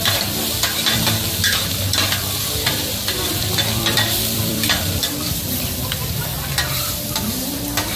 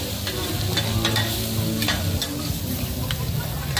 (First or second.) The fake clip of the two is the first